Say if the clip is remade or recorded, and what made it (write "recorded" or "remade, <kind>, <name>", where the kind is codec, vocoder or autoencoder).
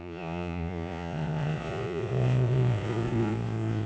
remade, vocoder, Vocos